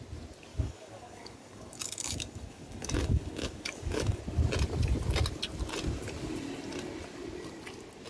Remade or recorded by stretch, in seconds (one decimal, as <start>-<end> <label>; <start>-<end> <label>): 0.0-0.5 recorded; 0.5-4.2 remade; 4.2-8.1 recorded

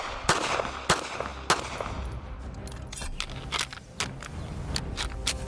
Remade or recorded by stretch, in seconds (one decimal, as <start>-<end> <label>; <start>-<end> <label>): 0.0-5.5 recorded

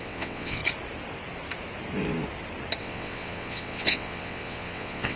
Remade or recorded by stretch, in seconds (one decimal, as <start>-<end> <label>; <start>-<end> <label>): 0.0-0.6 remade; 0.6-2.8 recorded; 2.8-5.2 remade

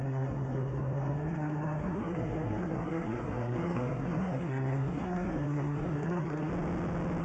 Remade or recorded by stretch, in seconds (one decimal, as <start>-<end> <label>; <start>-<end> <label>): 0.0-6.5 remade; 6.5-7.2 recorded

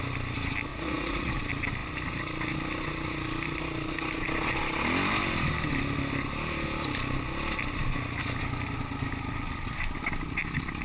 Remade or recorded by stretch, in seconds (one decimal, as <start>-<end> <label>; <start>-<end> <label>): 0.0-0.7 recorded; 0.7-1.3 remade; 1.3-10.8 recorded

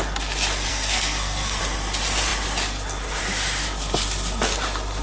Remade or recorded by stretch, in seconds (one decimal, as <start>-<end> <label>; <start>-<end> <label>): 0.0-0.7 recorded; 0.7-1.6 remade; 1.6-5.0 recorded